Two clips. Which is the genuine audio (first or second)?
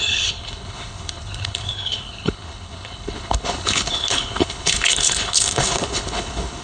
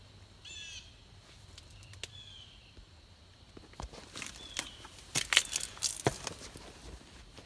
second